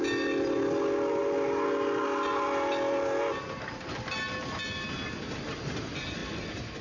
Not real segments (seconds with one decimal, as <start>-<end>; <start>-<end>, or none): none